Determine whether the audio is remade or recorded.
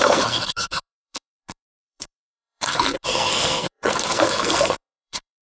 remade